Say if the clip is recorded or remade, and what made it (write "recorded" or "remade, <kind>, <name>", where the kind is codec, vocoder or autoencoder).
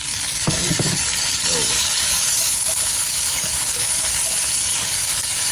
remade, codec, DAC